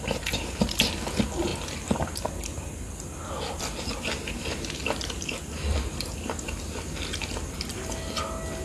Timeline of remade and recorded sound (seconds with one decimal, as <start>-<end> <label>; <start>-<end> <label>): 0.0-8.6 recorded

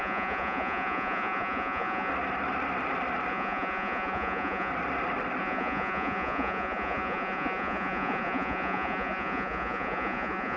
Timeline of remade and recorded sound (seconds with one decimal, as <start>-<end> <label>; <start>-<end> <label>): 0.0-2.1 remade; 2.1-3.3 recorded; 3.3-4.7 remade; 4.7-5.4 recorded; 5.4-10.6 remade

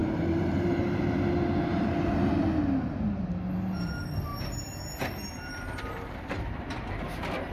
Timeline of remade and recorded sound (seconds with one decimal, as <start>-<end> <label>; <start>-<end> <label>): 0.0-0.8 remade; 0.8-1.7 recorded; 1.7-2.3 remade; 2.3-4.3 recorded; 4.3-6.7 remade; 6.7-7.5 recorded

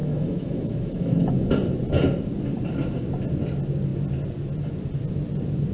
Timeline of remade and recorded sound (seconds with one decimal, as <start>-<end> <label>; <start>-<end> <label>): 0.0-1.5 remade; 1.5-5.7 recorded

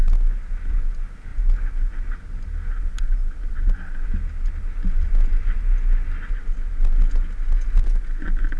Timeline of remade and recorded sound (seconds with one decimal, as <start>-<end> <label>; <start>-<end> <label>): 0.0-8.6 recorded

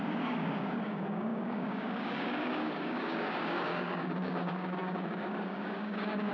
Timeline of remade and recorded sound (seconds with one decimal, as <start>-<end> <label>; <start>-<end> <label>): 0.0-6.3 remade